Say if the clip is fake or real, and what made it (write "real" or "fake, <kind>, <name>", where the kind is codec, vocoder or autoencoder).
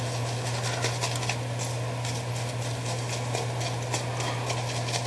real